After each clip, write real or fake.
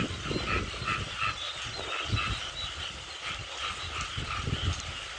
fake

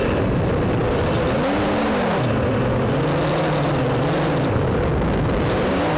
real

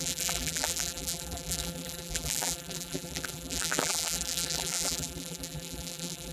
fake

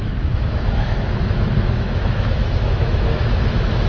fake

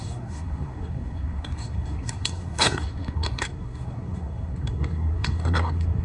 fake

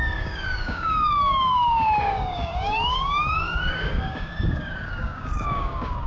fake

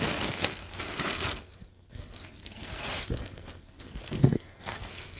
fake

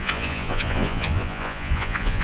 fake